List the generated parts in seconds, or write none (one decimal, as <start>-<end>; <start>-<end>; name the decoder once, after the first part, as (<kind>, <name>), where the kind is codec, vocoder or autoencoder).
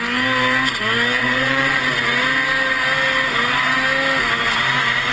1.2-1.8 (vocoder, WaveNeXt)